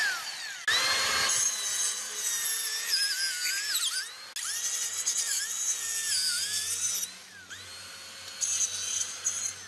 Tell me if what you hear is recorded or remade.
recorded